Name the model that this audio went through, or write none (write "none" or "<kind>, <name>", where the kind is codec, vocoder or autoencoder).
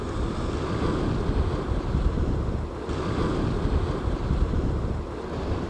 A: none